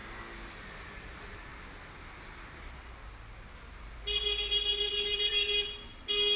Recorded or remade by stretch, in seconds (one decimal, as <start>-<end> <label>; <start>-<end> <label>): 0.0-6.4 recorded